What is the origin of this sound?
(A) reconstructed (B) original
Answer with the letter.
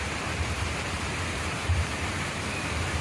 A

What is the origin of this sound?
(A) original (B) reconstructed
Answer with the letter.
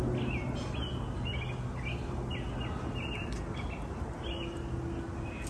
A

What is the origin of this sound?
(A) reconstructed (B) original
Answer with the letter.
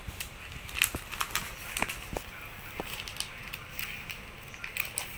B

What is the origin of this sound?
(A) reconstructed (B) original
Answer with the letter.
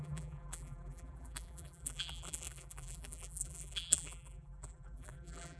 A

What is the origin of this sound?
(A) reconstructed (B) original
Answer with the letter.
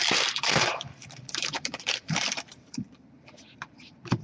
A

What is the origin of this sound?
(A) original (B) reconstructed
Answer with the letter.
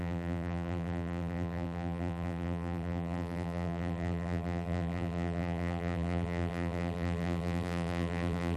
B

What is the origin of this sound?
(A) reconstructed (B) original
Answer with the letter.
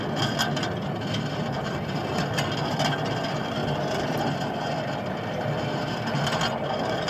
B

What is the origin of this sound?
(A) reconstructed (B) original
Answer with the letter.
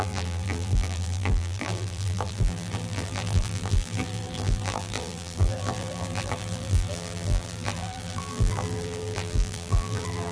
A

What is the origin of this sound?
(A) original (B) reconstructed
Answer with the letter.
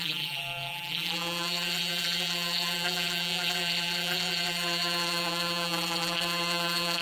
B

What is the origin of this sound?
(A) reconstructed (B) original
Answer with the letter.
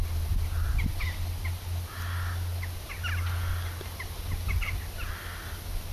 B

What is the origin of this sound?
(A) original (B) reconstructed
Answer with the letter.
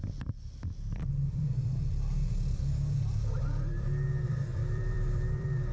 B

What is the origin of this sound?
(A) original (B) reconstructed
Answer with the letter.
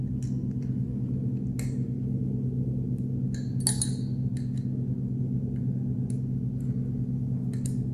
A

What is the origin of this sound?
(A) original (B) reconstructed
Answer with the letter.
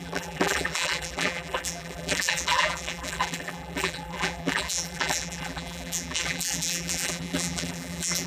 B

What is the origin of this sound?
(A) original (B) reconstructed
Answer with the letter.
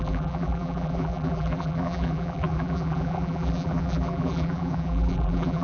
B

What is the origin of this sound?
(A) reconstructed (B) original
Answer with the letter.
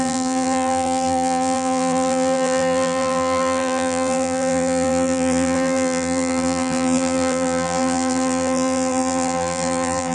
A